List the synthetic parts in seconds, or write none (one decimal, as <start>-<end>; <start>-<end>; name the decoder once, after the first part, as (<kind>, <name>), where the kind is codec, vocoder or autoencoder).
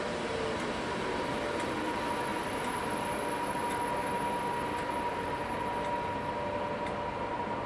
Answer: none